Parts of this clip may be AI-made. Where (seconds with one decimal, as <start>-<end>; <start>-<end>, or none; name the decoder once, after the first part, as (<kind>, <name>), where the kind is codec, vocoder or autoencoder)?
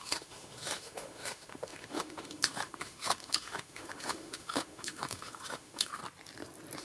0.0-6.0 (autoencoder, DAC-VAE)